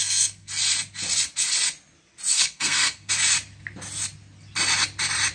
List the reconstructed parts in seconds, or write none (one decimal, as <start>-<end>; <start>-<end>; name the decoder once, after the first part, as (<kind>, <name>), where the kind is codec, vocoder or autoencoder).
0.0-0.5 (codec, SNAC); 2.3-3.1